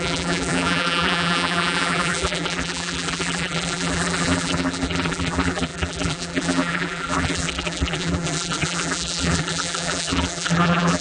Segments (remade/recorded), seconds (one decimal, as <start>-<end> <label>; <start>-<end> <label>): 0.0-11.0 remade